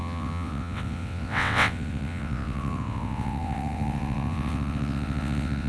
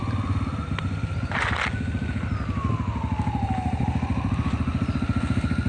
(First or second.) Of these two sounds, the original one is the second